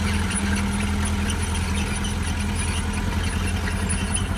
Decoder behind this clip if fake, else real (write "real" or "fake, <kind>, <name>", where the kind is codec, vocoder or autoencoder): real